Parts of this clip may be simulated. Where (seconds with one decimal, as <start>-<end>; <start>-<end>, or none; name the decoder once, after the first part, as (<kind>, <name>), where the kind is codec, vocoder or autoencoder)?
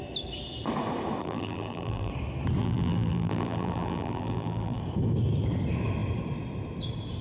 1.2-2.1 (vocoder, BigVGAN v2); 2.6-4.8